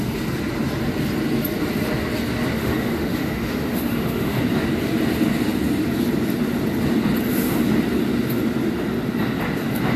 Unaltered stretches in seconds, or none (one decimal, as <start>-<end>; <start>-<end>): 0.0-2.6; 4.4-10.0